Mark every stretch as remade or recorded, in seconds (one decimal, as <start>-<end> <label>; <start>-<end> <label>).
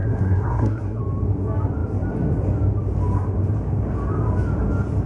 0.0-1.0 remade; 1.0-5.1 recorded